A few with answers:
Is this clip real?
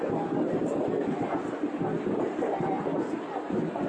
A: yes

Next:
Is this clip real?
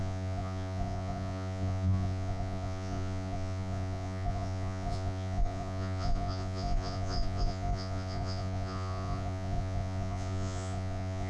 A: no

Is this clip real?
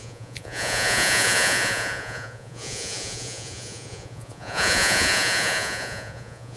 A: no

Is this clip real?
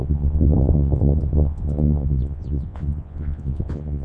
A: no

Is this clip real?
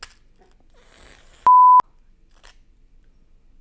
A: yes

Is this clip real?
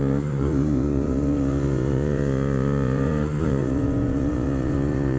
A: no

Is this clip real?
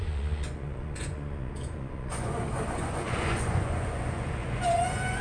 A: no